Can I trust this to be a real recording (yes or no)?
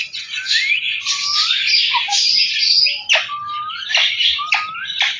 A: yes